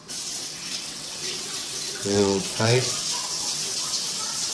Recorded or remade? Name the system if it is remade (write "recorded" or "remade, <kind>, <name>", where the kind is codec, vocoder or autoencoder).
remade, vocoder, WaveNeXt